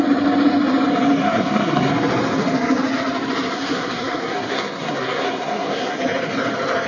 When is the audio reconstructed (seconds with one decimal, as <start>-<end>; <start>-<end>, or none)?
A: 1.2-1.9; 3.5-6.0